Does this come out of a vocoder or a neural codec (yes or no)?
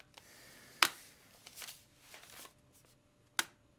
no